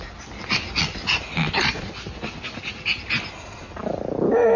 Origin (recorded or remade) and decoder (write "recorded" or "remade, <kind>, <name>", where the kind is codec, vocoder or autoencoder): recorded